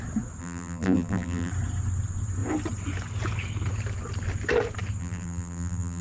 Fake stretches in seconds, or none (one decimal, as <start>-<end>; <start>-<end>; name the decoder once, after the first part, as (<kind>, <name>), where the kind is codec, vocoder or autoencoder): 0.4-1.5 (vocoder, BigVGAN v2); 5.0-6.0